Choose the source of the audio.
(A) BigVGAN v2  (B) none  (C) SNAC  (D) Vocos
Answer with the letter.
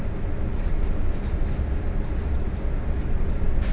B